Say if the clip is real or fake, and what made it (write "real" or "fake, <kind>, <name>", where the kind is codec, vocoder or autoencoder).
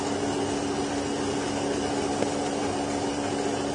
real